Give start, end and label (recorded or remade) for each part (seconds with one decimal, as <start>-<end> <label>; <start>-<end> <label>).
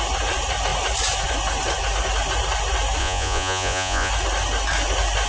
0.0-3.0 recorded; 3.0-4.1 remade; 4.1-5.3 recorded